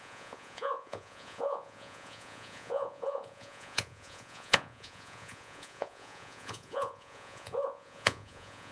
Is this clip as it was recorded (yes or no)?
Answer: no